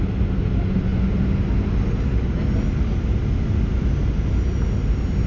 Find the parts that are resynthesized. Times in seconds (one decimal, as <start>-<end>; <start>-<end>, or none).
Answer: none